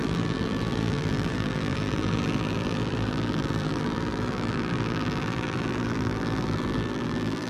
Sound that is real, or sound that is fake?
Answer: fake